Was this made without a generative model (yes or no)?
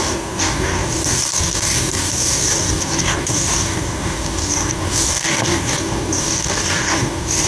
no